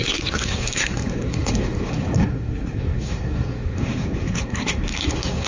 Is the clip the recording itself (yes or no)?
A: no